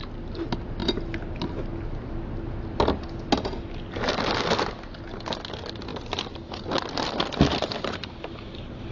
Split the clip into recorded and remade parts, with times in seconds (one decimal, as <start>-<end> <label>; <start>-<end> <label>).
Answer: 0.0-8.9 recorded